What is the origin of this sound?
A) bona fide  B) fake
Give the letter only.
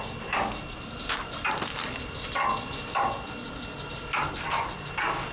A